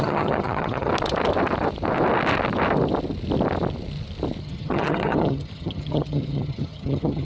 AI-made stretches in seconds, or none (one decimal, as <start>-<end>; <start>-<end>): 0.0-0.9; 4.4-7.2